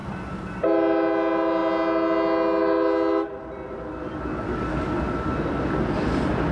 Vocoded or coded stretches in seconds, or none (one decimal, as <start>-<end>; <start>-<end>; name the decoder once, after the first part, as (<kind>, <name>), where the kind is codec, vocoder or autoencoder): 0.0-0.6 (vocoder, BigVGAN v2)